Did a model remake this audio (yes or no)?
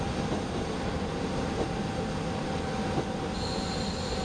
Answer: no